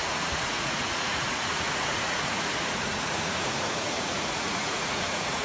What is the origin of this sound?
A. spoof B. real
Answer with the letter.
A